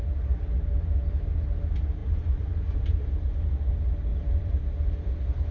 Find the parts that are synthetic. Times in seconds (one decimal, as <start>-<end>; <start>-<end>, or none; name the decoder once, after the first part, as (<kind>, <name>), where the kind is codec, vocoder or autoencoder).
2.0-3.0 (vocoder, BigVGAN v2); 4.1-4.6